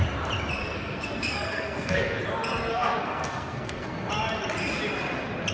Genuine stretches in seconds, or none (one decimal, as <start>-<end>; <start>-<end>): 0.0-0.6; 2.2-2.7; 4.1-5.5